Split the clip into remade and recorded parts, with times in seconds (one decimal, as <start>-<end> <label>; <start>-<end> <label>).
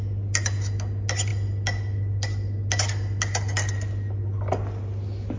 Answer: 0.0-5.4 recorded